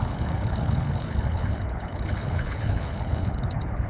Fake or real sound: fake